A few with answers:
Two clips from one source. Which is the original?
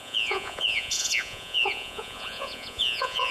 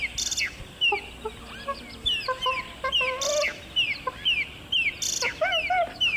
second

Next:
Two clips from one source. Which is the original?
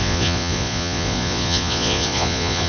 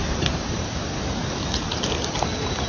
second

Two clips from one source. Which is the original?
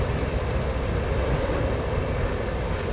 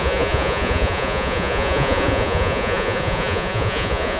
first